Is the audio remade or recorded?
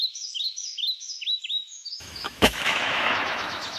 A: remade